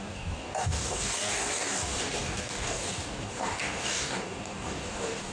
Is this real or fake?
fake